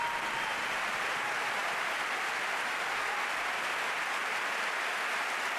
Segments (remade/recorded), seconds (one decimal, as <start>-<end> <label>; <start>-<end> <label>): 0.0-5.6 recorded